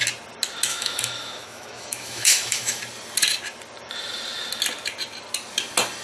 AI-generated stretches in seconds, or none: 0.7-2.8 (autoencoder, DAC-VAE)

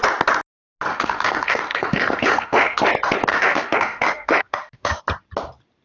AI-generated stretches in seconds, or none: 0.9-2.8 (autoencoder, DAC-VAE); 3.3-5.0

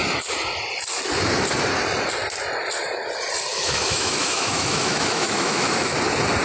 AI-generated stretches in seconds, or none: 3.5-5.9 (autoencoder, DAC-VAE)

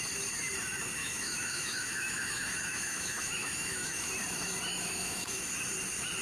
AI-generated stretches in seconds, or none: 1.0-4.1 (autoencoder, DAC-VAE); 4.7-5.4

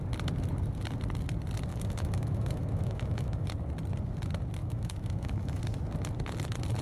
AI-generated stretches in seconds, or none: 1.7-3.5 (autoencoder, DAC-VAE); 4.6-5.6

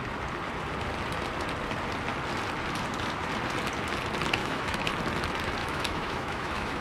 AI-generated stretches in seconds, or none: 4.4-4.9 (autoencoder, DAC-VAE); 5.6-6.8